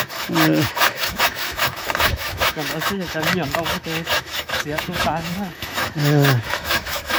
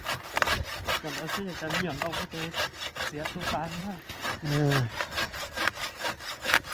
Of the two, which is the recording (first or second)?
second